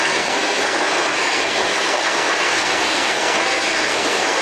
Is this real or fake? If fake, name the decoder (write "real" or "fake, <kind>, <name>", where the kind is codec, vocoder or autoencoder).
fake, codec, SNAC